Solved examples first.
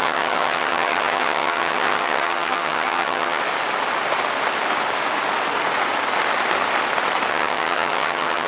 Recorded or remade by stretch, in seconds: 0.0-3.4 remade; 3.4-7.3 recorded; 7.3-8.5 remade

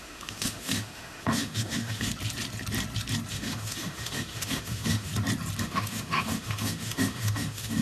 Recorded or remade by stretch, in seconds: 0.0-2.1 remade; 2.1-3.3 recorded; 3.3-5.1 remade; 5.1-5.6 recorded; 5.6-7.8 remade

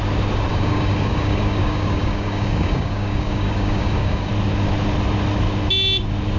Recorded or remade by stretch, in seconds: 0.0-0.5 recorded; 0.5-4.3 remade; 4.3-6.4 recorded